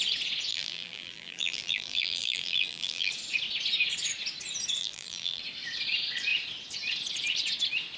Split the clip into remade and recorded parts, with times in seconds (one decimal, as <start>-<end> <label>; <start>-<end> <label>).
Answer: 0.0-0.5 recorded; 0.5-3.1 remade; 3.1-4.8 recorded; 4.8-5.4 remade; 5.4-8.0 recorded